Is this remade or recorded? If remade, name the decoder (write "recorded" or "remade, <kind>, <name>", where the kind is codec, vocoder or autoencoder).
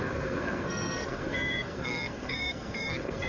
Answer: remade, codec, SNAC